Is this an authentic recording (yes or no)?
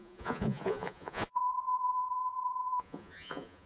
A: no